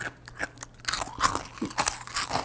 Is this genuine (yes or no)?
yes